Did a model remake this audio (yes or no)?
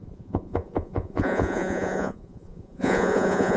yes